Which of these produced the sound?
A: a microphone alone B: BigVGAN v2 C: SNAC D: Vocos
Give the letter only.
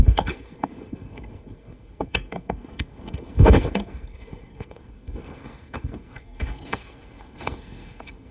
C